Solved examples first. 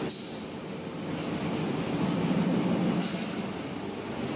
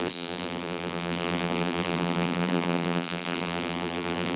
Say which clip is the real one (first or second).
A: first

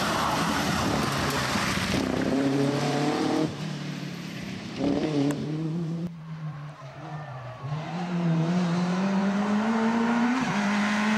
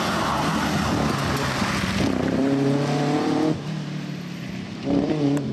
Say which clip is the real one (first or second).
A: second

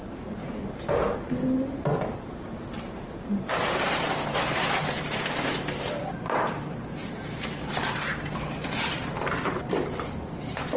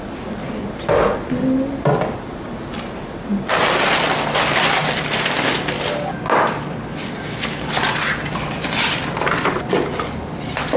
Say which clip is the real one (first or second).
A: second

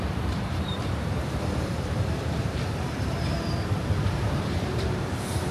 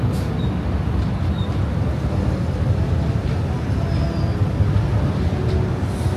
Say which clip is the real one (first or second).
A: second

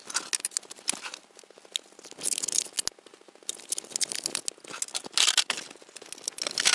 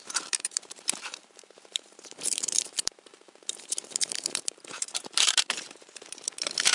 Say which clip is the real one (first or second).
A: first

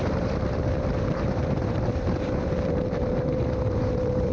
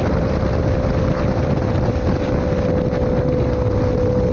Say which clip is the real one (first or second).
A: second